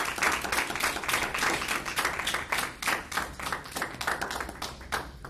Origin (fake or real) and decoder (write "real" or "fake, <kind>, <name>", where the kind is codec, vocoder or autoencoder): real